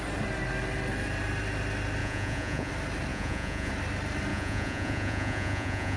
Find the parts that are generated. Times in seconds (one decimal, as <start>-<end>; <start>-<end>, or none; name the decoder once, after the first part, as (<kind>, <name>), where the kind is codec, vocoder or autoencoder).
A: 2.0-2.7 (vocoder, Vocos); 3.1-3.7; 4.3-6.0